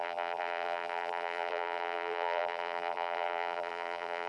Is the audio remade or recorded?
remade